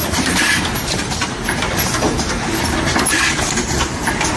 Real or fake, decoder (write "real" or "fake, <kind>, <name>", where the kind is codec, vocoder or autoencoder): fake, vocoder, BigVGAN v2